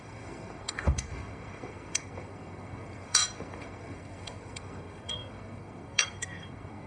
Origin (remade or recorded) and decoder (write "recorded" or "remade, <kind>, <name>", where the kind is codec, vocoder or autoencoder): remade, codec, SNAC